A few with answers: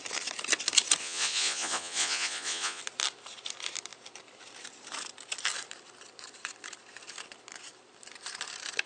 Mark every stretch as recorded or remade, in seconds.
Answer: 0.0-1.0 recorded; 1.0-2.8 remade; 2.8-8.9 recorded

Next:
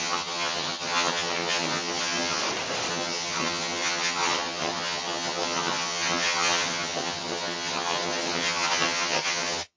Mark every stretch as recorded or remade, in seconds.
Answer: 0.0-2.4 remade; 2.4-2.9 recorded; 2.9-9.8 remade

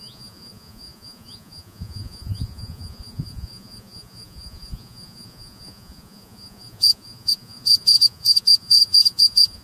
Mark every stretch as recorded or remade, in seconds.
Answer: 0.0-9.6 remade